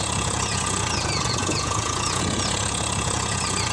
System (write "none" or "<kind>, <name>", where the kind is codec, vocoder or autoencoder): vocoder, Vocos